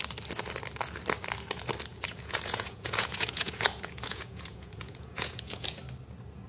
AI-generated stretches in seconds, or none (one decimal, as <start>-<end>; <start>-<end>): 1.9-5.8